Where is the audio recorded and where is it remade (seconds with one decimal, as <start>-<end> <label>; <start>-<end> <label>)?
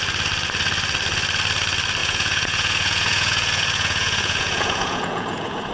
0.0-2.0 recorded; 2.0-5.7 remade